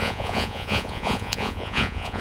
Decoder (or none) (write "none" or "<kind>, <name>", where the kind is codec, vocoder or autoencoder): vocoder, Vocos